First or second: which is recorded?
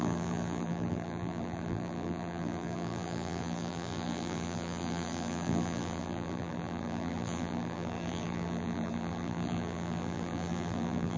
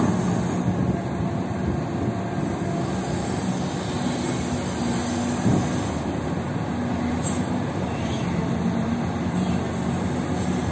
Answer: second